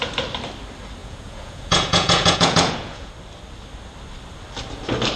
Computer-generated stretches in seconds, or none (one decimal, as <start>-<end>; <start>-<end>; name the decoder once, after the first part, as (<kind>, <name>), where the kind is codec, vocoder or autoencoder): 1.0-3.1 (vocoder, Vocos)